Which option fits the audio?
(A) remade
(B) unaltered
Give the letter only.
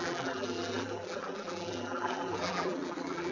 A